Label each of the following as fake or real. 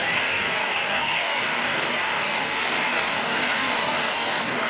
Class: fake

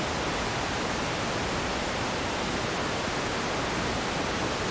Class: real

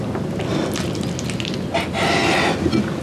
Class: real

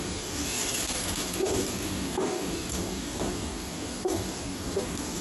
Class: fake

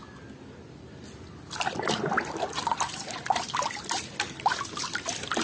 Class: real